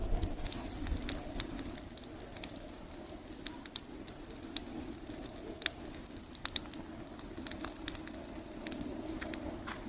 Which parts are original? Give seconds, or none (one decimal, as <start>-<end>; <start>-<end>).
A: 0.7-9.9